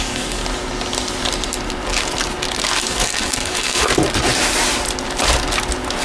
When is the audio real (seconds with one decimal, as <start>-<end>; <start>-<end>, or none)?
0.4-2.8; 3.9-6.0